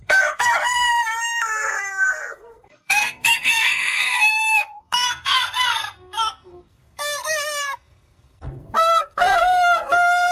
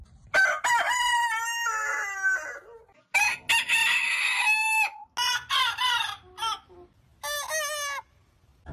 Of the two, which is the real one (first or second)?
second